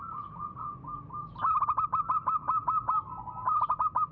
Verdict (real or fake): real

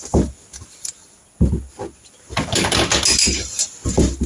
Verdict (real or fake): real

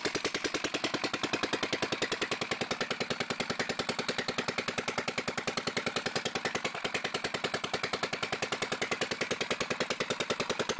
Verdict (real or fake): real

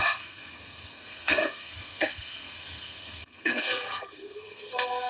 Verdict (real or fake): fake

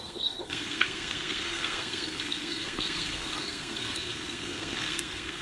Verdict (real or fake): fake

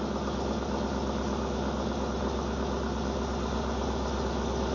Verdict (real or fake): real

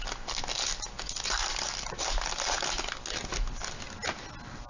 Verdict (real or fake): real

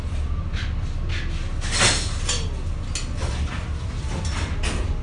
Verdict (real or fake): real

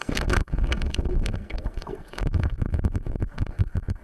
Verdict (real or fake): fake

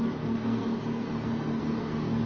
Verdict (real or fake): fake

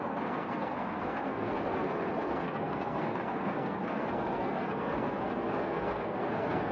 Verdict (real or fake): fake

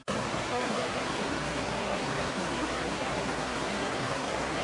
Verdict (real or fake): fake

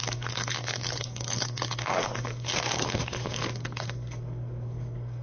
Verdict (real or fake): fake